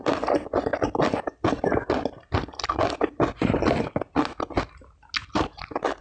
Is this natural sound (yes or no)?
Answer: yes